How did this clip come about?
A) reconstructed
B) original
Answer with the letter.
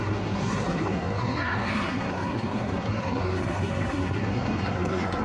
A